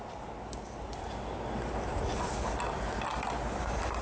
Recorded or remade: recorded